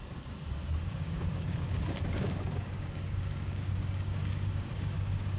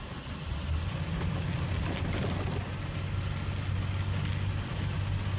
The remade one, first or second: first